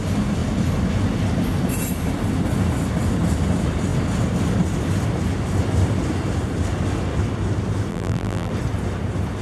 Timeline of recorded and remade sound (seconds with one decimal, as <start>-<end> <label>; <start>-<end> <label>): 0.0-7.9 recorded; 7.9-8.5 remade; 8.5-9.4 recorded